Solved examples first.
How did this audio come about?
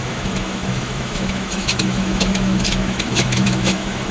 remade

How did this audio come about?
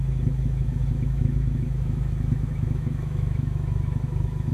remade